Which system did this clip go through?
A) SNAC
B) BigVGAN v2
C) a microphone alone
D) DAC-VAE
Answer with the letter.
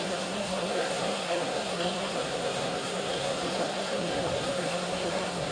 A